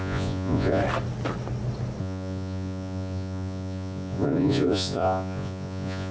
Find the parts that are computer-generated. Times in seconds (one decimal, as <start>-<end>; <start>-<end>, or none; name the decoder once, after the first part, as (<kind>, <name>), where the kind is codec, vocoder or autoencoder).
0.0-0.8 (vocoder, Vocos); 2.0-6.1

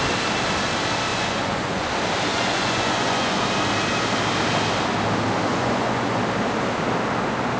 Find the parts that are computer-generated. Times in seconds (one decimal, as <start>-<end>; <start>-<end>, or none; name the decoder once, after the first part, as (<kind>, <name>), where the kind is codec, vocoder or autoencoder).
1.1-1.9 (vocoder, Vocos); 2.3-3.4; 5.5-6.2

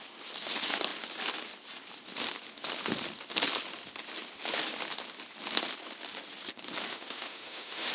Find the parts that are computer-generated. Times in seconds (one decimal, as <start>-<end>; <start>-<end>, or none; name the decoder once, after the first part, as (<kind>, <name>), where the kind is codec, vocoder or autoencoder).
6.9-7.9 (autoencoder, DAC-VAE)

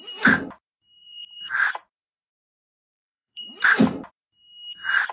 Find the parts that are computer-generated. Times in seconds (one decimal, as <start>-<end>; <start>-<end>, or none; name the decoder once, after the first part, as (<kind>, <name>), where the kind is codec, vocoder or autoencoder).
1.0-1.9 (vocoder, BigVGAN v2); 2.3-4.1